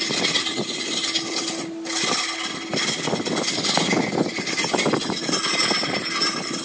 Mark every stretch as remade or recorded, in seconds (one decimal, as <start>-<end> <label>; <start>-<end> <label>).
0.0-6.6 recorded